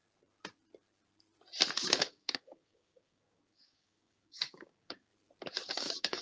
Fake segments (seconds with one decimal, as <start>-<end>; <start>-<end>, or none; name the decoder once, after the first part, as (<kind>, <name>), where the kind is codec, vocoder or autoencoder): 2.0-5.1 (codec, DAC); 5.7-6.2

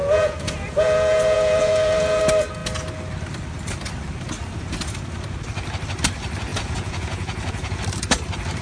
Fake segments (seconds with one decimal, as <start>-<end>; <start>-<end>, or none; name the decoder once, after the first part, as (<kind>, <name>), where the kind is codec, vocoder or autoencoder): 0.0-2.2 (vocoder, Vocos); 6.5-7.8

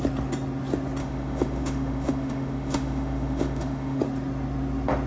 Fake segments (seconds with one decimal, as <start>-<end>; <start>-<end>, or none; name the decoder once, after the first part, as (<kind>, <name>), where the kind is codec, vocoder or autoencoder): 1.0-4.0 (autoencoder, DAC-VAE)

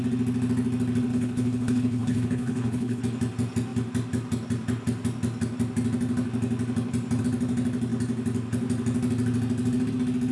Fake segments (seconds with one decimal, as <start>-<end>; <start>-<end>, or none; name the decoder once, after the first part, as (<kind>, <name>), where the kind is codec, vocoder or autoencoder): 1.1-3.0 (codec, HILCodec)